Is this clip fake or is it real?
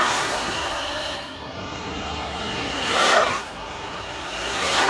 fake